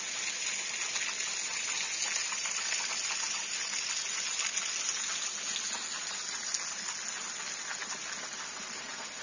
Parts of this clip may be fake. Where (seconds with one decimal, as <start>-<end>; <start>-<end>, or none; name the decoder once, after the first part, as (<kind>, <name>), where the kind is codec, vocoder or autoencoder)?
2.2-3.1 (vocoder, BigVGAN v2)